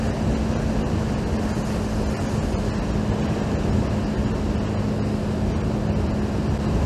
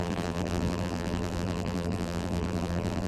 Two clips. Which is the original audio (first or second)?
first